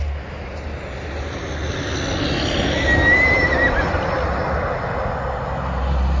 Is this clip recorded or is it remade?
recorded